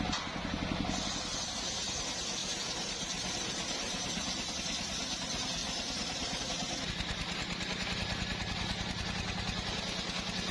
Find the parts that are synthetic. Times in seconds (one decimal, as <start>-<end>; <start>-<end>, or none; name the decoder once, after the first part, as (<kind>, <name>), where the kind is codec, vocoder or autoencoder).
2.4-4.5 (vocoder, BigVGAN v2); 5.6-6.4